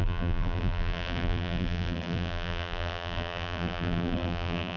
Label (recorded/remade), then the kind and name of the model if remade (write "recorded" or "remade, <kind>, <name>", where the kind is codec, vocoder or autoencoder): remade, vocoder, BigVGAN v2